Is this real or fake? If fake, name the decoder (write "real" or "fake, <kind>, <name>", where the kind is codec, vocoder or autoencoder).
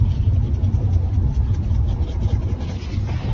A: real